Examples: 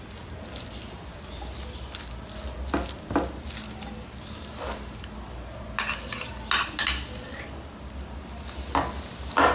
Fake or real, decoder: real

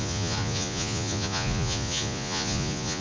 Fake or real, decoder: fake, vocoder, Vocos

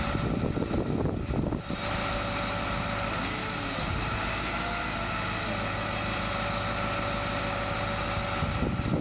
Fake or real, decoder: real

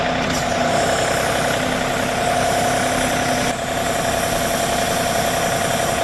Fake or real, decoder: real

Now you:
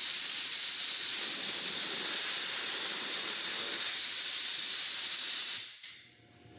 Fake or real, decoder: real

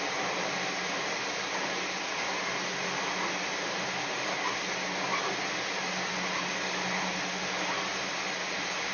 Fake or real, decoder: real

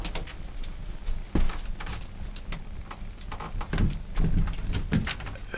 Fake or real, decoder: real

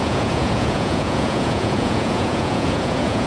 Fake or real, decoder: fake, vocoder, Vocos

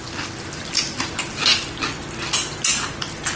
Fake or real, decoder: real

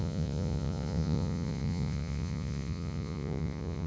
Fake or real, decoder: fake, vocoder, Vocos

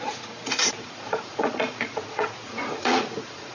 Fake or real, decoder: fake, vocoder, Vocos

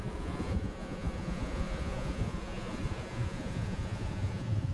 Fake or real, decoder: fake, vocoder, Vocos